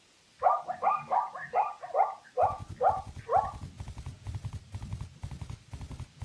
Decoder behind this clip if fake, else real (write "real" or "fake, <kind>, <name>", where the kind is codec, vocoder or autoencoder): real